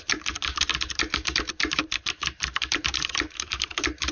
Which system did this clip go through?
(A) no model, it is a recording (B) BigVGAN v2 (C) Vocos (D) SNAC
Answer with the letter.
B